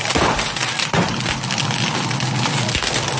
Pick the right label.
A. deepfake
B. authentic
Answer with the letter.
B